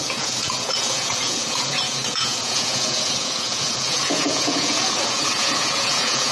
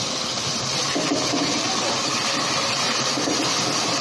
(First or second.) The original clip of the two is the second